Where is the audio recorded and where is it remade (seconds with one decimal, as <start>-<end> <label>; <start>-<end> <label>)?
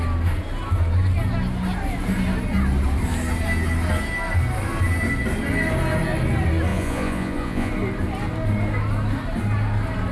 0.0-6.7 recorded; 6.7-7.7 remade; 7.7-10.1 recorded